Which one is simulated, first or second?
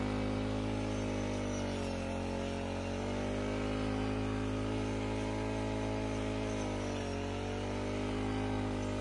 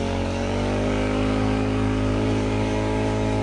second